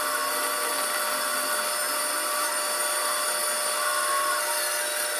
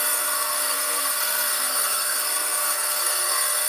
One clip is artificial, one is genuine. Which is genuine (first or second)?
first